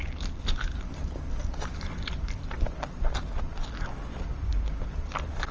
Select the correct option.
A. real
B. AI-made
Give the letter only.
A